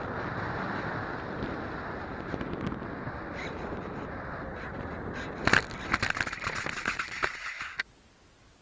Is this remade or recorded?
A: recorded